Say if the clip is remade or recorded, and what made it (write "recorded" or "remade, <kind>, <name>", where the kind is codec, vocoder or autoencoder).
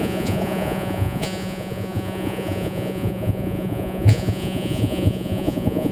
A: remade, vocoder, Vocos